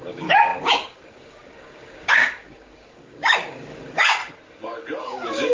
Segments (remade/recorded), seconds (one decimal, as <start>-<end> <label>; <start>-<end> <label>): 0.0-4.2 remade; 4.2-5.0 recorded; 5.0-5.5 remade